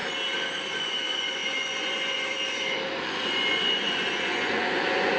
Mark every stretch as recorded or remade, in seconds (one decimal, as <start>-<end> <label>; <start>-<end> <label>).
0.0-0.8 recorded; 0.8-5.2 remade